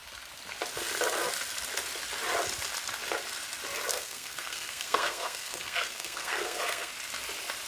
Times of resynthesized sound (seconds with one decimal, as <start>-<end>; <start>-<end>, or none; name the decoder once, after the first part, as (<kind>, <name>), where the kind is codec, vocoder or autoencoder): 3.9-6.9 (codec, SNAC)